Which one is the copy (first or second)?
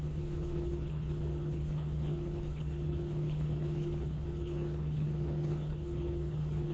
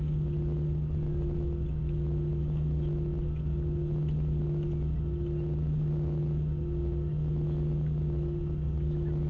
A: first